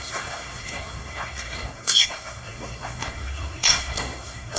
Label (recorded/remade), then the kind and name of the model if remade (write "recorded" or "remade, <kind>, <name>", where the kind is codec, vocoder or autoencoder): remade, codec, SNAC